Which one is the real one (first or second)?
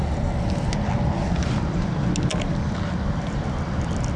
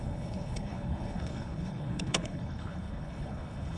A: first